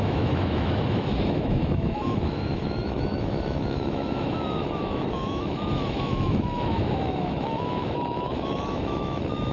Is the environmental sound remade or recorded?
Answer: remade